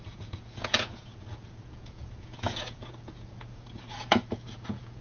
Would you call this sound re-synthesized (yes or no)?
yes